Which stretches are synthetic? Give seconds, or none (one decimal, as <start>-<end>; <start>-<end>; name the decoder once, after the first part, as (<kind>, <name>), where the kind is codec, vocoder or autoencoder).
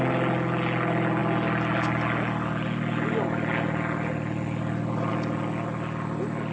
none